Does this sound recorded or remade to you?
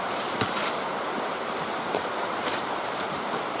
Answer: remade